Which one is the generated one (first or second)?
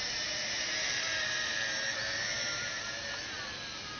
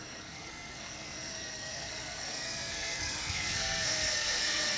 second